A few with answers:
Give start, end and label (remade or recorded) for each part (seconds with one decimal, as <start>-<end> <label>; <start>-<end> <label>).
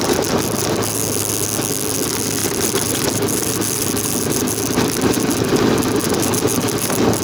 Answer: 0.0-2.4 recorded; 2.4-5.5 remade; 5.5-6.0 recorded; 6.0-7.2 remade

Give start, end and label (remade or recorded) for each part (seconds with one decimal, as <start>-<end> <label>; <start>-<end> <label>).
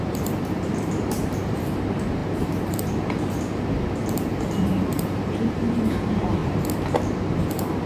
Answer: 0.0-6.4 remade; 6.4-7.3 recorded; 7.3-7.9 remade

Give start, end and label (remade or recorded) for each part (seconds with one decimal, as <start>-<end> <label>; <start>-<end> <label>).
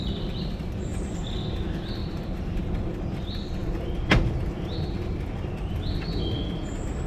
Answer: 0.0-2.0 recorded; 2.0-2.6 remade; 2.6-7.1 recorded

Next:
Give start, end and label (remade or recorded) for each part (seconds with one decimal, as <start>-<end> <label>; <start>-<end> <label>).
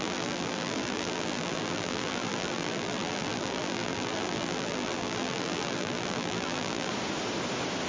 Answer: 0.0-6.9 remade; 6.9-7.9 recorded